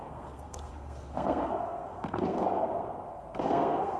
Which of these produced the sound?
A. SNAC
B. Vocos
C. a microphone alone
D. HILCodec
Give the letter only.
A